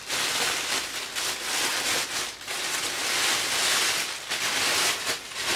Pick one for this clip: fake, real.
real